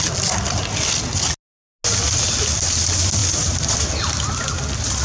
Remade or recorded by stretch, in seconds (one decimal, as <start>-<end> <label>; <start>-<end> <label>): 0.0-5.0 recorded